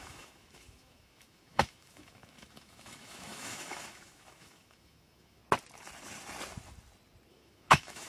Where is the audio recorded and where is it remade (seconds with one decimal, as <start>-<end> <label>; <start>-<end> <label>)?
0.0-5.4 remade; 5.4-7.3 recorded; 7.3-8.1 remade